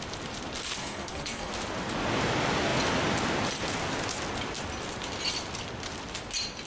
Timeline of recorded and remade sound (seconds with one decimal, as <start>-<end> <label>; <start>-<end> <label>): 0.0-0.8 recorded; 0.8-1.5 remade; 1.5-6.7 recorded